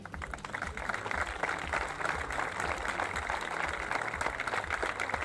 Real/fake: real